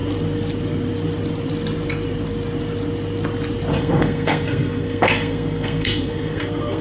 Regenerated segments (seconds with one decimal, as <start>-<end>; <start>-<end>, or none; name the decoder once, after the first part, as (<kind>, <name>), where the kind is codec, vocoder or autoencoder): 3.8-6.8 (codec, SNAC)